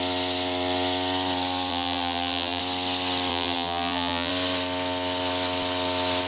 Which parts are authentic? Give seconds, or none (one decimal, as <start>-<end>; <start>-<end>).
0.0-1.7; 2.6-3.3; 4.3-6.3